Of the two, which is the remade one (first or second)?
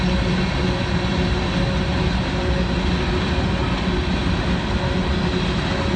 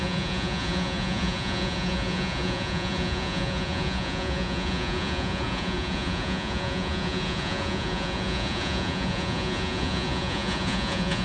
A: second